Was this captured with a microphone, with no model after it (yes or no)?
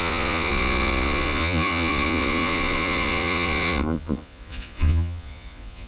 no